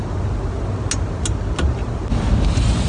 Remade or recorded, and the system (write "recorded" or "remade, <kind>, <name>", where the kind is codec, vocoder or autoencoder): recorded